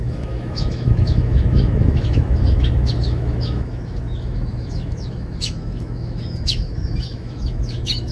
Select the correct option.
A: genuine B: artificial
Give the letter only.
B